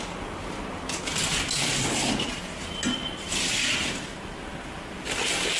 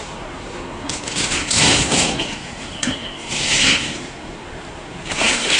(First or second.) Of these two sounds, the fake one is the second